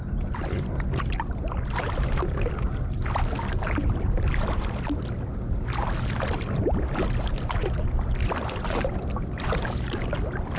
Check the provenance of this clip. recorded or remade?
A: recorded